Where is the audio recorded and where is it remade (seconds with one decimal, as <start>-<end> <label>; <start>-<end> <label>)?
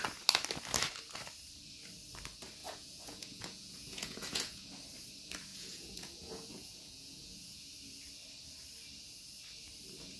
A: 0.0-2.6 recorded; 2.6-4.7 remade; 4.7-5.5 recorded; 5.5-7.6 remade; 7.6-10.2 recorded